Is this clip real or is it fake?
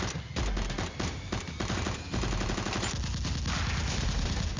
real